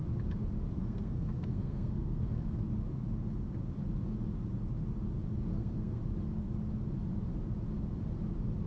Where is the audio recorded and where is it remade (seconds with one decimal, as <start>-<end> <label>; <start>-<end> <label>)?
0.0-0.8 recorded; 0.8-2.6 remade; 2.6-5.5 recorded; 5.5-6.0 remade; 6.0-8.7 recorded